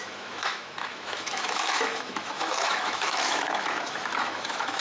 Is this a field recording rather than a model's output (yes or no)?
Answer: no